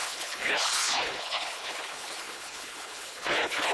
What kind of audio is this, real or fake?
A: fake